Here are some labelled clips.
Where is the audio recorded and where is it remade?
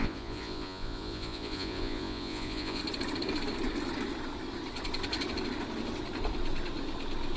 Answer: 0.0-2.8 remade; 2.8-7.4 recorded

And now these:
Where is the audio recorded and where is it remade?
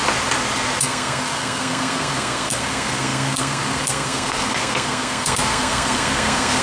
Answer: 0.0-0.8 recorded; 0.8-6.6 remade